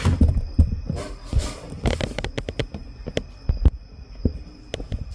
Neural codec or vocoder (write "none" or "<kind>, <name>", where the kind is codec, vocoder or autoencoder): none